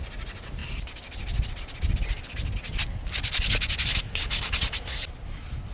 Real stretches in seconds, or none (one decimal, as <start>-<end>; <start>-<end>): 0.0-5.7